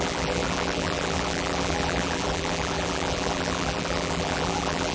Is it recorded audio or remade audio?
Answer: remade